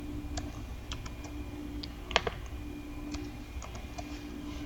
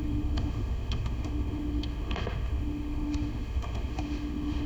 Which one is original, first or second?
first